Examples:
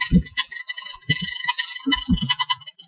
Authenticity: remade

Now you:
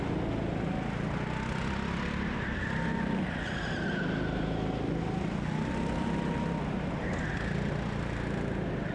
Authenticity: recorded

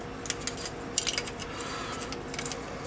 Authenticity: recorded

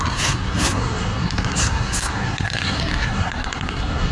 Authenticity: remade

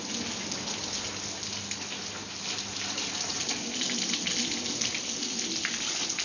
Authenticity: recorded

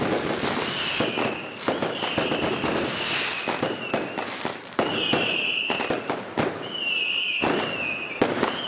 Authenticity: recorded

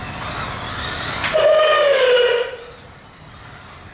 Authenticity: recorded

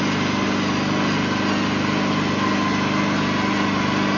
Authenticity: recorded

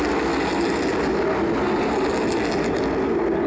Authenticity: recorded